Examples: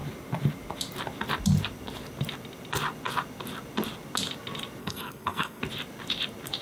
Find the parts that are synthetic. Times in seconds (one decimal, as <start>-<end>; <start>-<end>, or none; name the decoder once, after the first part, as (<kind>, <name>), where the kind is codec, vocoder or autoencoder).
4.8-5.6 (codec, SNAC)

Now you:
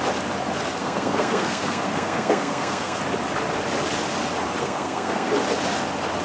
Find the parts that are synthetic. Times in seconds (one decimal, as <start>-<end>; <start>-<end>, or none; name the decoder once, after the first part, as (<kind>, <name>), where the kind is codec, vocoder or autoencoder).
0.8-3.0 (codec, SNAC); 4.6-5.3

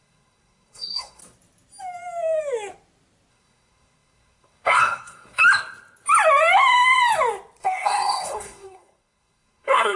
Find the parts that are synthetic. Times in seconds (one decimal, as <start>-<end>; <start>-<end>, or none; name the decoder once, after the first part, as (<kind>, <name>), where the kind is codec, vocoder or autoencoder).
0.0-1.2 (codec, SNAC); 3.3-5.4; 7.6-10.0

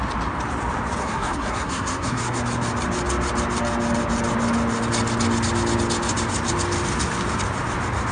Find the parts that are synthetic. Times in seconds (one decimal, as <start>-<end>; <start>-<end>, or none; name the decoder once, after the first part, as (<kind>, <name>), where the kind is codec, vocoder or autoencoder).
1.0-2.4 (codec, SNAC)